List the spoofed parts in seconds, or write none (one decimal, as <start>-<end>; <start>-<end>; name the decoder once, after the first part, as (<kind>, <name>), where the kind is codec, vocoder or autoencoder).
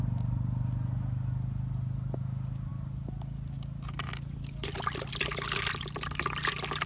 none